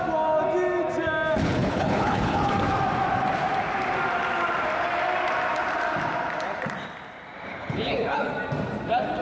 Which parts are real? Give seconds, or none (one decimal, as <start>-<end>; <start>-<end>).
0.0-1.4; 2.5-7.5; 8.3-9.2

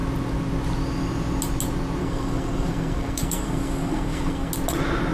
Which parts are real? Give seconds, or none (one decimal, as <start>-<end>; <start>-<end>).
0.0-2.0; 4.5-5.1

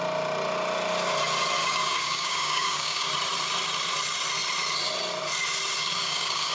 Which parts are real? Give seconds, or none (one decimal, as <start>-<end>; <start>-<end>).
0.0-1.6; 3.1-5.8

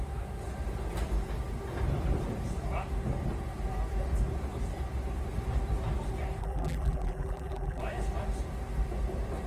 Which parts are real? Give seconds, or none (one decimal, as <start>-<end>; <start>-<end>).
0.0-6.4; 7.8-9.5

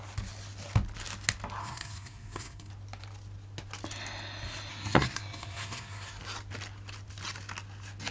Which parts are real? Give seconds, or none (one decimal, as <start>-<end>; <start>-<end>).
0.0-1.6; 2.7-4.7; 6.2-8.1